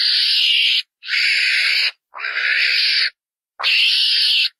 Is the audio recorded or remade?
recorded